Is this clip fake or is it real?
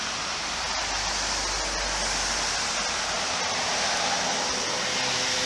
real